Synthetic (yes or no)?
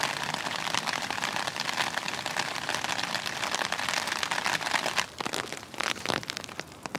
no